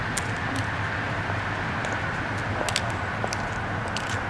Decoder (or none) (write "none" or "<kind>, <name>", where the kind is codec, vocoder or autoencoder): none